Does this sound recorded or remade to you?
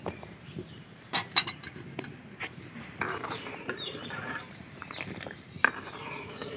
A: remade